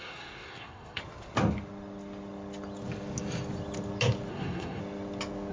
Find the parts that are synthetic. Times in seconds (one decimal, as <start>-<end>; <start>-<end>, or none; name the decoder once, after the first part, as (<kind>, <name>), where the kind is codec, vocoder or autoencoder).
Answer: 0.0-1.0 (codec, SNAC); 4.3-4.8